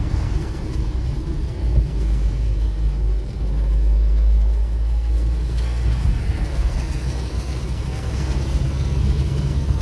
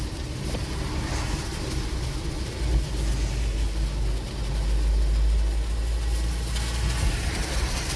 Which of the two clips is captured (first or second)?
second